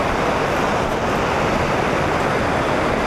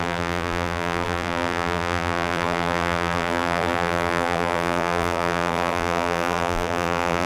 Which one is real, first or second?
first